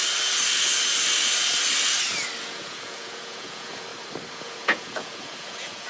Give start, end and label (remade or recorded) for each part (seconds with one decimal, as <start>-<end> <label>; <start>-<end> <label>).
0.0-2.4 recorded; 2.4-3.9 remade; 3.9-4.4 recorded; 4.4-5.9 remade